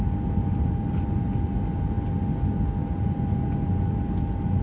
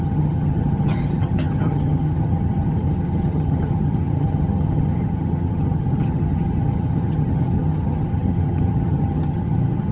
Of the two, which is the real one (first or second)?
first